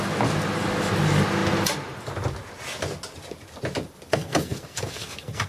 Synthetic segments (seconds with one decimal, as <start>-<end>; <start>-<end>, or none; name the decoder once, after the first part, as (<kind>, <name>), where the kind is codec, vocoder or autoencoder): 4.1-5.5 (codec, SNAC)